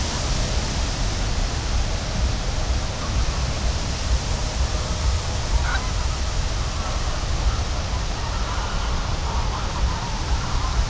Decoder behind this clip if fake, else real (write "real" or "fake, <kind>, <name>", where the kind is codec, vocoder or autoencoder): real